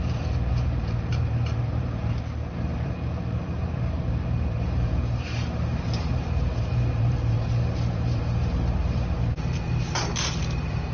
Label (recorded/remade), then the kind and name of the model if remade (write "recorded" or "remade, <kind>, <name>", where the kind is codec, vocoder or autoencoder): remade, vocoder, BigVGAN v2